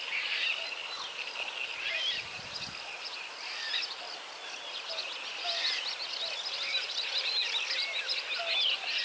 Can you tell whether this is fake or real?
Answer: real